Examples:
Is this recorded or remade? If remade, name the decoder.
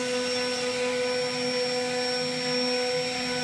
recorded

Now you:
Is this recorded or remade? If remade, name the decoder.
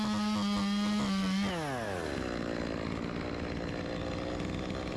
recorded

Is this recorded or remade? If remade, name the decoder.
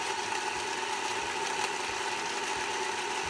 recorded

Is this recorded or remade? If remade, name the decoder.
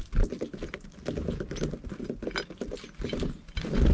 recorded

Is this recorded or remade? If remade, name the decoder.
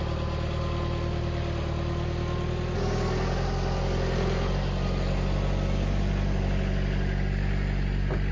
recorded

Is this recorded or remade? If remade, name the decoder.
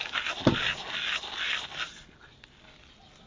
recorded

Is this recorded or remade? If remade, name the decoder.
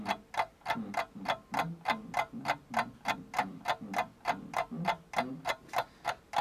recorded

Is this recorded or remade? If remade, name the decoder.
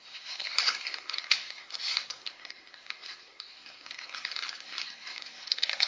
remade, codec, SNAC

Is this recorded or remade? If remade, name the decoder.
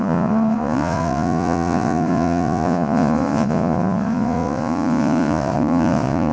remade, vocoder, Vocos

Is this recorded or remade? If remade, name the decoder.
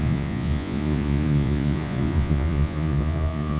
remade, vocoder, Vocos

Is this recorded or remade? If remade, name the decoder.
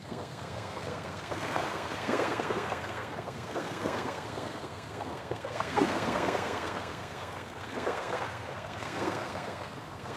remade, codec, SNAC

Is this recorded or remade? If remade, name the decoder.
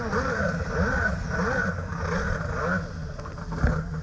recorded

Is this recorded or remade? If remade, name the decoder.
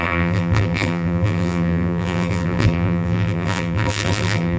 remade, vocoder, BigVGAN v2